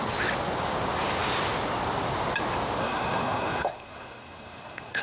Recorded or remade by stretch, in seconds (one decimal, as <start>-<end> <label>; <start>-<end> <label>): 0.0-2.8 recorded; 2.8-5.0 remade